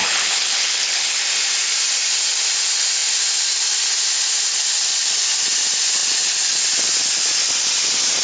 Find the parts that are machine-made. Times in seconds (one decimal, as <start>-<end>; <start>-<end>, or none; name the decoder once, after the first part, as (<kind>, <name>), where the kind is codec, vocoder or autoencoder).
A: 0.0-1.2 (codec, HILCodec)